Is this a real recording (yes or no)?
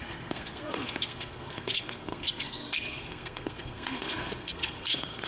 no